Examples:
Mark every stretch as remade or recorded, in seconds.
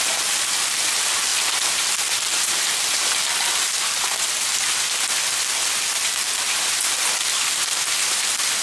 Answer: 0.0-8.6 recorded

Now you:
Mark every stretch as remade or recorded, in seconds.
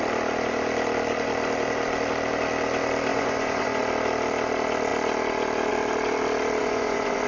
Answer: 0.0-3.1 recorded; 3.1-3.8 remade; 3.8-6.6 recorded; 6.6-7.3 remade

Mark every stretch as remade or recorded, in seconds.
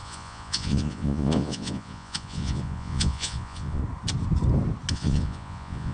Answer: 0.0-3.8 remade; 3.8-4.9 recorded; 4.9-5.9 remade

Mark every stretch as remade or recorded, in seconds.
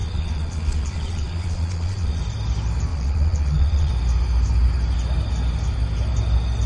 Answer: 0.0-2.2 remade; 2.2-2.9 recorded; 2.9-3.9 remade; 3.9-6.7 recorded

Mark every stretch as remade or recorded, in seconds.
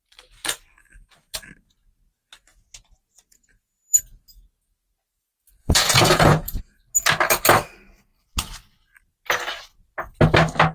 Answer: 0.0-2.5 recorded; 2.5-4.0 remade; 4.0-5.6 recorded; 5.6-6.6 remade; 6.6-10.7 recorded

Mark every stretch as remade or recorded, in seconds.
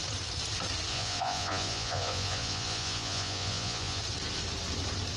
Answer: 0.0-0.9 recorded; 0.9-4.0 remade; 4.0-5.2 recorded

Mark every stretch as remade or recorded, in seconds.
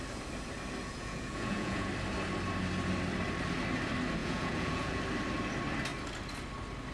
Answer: 0.0-0.8 recorded; 0.8-1.9 remade; 1.9-4.2 recorded; 4.2-5.0 remade; 5.0-6.9 recorded